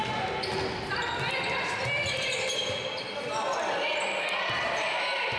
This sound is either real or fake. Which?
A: real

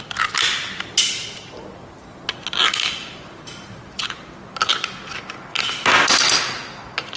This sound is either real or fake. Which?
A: real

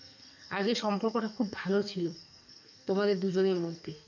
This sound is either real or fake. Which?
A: fake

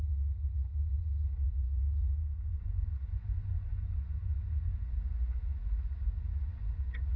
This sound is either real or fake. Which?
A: fake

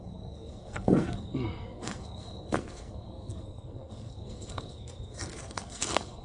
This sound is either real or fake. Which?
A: fake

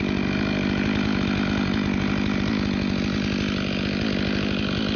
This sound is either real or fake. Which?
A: real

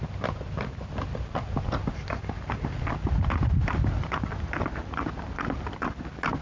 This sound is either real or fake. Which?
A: real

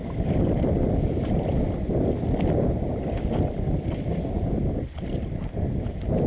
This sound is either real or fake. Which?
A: fake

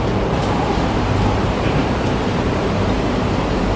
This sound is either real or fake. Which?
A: fake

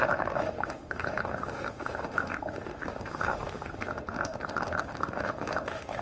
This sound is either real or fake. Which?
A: fake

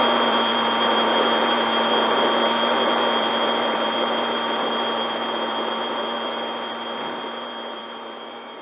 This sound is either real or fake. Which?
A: fake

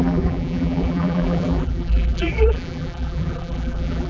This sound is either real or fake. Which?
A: fake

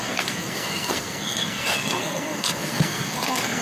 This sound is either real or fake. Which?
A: fake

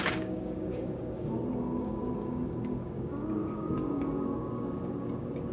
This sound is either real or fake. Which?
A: fake